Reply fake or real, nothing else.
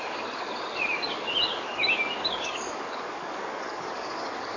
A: fake